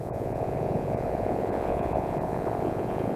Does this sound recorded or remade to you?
remade